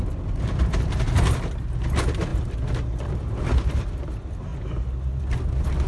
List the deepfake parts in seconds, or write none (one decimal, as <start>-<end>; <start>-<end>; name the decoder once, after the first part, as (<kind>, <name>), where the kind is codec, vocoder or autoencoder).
none